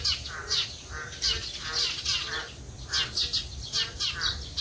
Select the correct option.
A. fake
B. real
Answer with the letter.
B